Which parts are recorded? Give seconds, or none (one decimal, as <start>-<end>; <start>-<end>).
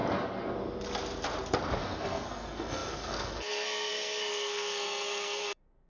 0.0-1.8